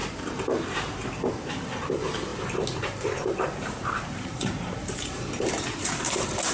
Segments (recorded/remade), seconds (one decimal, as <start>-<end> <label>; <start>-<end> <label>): 0.0-1.5 remade; 1.5-2.3 recorded; 2.3-6.5 remade